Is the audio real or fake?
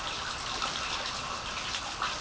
real